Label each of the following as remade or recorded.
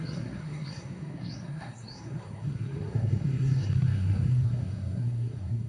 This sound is remade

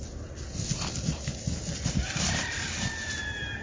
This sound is recorded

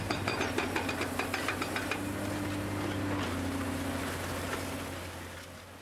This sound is recorded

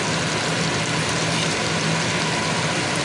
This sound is recorded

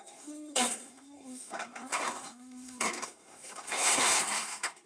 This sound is remade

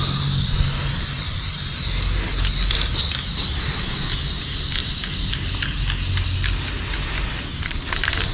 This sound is recorded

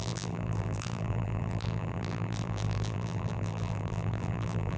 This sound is remade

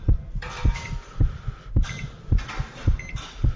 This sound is recorded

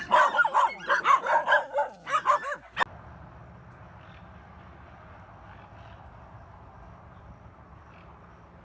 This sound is recorded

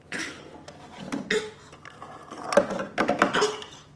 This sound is recorded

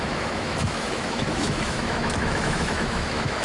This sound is remade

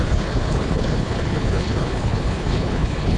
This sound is remade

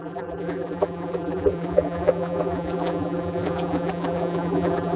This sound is remade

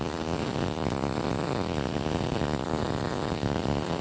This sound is recorded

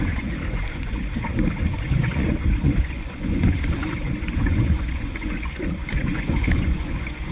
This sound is remade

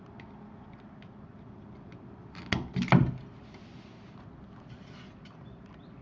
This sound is recorded